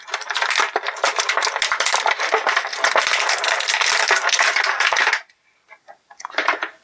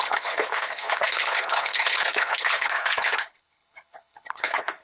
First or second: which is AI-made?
second